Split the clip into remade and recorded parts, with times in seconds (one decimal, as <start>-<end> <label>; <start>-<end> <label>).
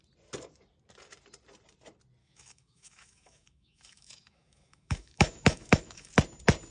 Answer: 0.0-2.2 recorded; 2.2-6.1 remade; 6.1-6.7 recorded